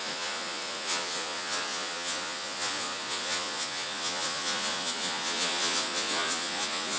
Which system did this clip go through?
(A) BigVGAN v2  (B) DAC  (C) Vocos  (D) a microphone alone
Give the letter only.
C